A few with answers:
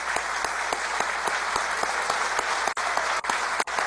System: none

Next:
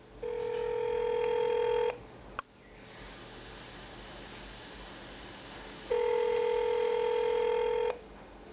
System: none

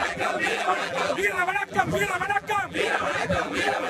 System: vocoder, BigVGAN v2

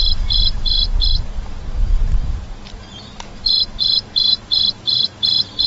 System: vocoder, BigVGAN v2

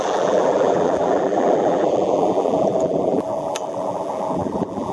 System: vocoder, BigVGAN v2